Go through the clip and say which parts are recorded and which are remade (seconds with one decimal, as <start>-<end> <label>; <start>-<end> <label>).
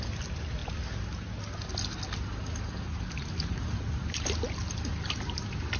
0.0-5.8 recorded